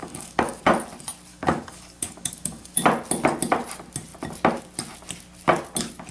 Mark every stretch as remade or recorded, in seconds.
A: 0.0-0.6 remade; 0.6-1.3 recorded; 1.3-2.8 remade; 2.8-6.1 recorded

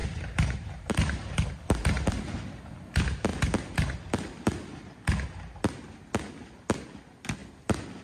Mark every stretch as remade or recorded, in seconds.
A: 0.0-1.5 remade; 1.5-8.0 recorded

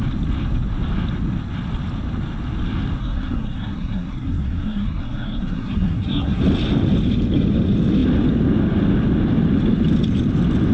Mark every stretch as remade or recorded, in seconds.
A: 0.0-3.0 recorded; 3.0-6.4 remade; 6.4-10.7 recorded